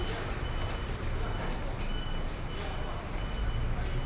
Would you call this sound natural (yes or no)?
yes